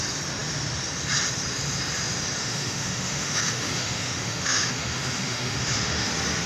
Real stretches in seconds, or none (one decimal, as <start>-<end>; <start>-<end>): 0.0-2.4; 6.1-6.5